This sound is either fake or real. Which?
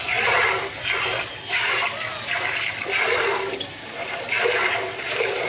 real